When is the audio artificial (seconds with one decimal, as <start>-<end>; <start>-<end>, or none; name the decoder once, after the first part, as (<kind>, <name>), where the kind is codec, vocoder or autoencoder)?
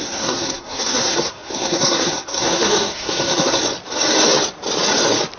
0.0-3.6 (codec, SNAC)